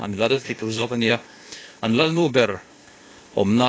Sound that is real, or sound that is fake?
fake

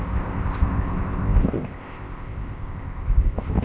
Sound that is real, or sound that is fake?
fake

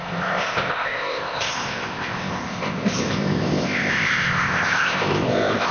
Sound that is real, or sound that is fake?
fake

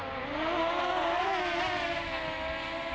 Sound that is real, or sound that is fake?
real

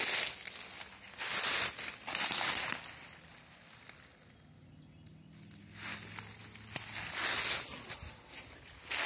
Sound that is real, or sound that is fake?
real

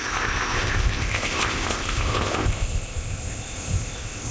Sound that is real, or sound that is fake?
fake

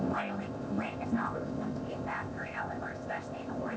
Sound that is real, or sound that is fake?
fake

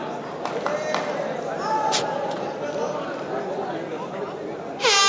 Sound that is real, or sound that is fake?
real